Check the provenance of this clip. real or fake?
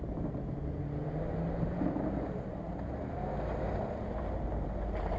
real